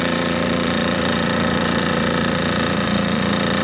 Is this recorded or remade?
remade